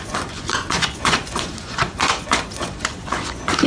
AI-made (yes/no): yes